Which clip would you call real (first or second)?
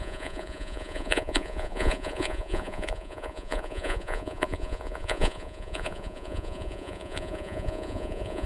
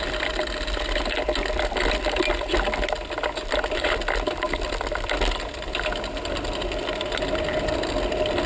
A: second